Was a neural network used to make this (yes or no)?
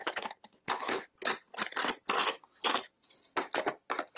no